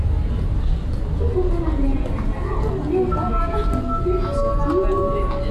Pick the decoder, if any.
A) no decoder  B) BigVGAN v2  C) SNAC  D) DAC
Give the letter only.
A